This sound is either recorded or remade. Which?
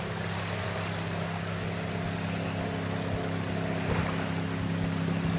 recorded